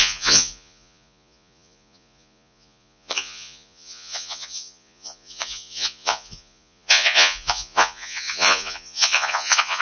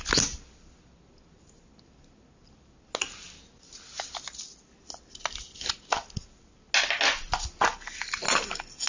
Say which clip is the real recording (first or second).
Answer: second